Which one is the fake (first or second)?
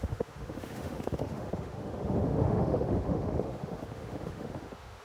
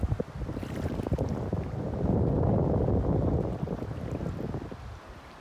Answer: first